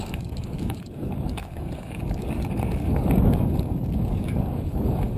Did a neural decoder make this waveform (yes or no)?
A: yes